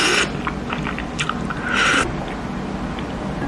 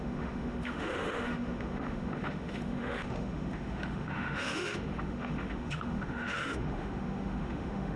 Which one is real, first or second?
first